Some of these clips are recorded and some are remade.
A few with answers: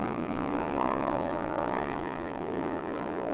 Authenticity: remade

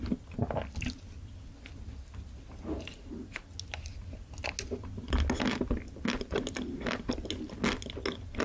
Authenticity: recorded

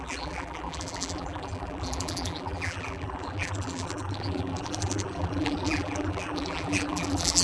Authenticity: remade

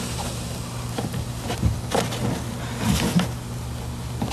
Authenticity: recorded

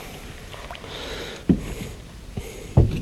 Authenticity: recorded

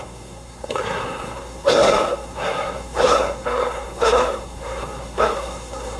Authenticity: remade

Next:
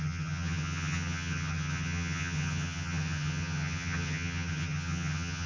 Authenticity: remade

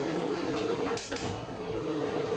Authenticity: remade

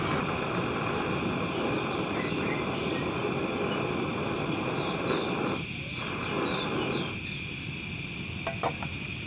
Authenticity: recorded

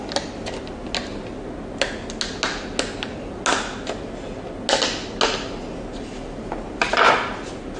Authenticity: recorded